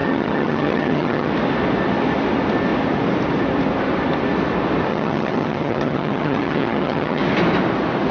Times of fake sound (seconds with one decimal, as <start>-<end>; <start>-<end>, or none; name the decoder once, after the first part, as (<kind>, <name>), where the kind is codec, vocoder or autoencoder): 0.0-1.3 (vocoder, HiFi-GAN); 4.9-7.2